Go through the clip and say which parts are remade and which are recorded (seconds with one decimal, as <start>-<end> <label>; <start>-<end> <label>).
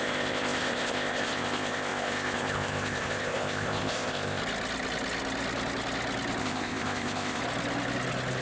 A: 0.0-4.4 remade; 4.4-6.4 recorded; 6.4-7.4 remade; 7.4-8.4 recorded